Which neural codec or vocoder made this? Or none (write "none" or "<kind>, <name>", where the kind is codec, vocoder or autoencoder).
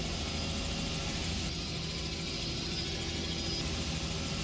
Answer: none